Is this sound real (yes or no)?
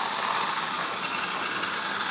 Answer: yes